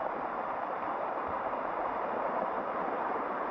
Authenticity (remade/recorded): remade